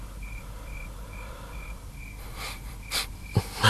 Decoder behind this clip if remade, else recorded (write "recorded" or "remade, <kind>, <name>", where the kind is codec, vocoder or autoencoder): remade, vocoder, BigVGAN v2